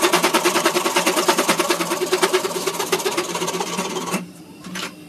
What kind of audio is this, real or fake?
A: fake